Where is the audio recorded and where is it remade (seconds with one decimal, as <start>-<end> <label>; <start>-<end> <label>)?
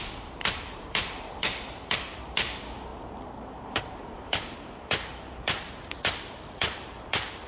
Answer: 0.0-0.4 recorded; 0.4-2.2 remade; 2.2-2.9 recorded; 2.9-7.0 remade; 7.0-7.5 recorded